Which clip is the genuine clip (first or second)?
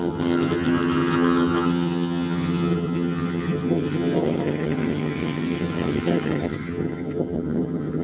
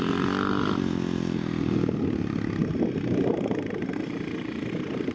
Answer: second